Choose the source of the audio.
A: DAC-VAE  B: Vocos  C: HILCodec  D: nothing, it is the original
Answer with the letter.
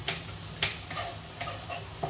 D